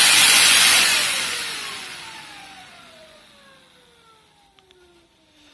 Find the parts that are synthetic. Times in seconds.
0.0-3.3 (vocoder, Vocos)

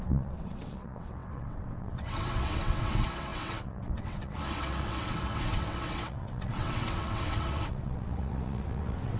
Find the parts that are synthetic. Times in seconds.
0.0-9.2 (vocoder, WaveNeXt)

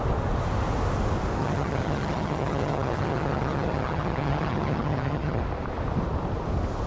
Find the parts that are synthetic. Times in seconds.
1.4-5.4 (vocoder, HiFi-GAN)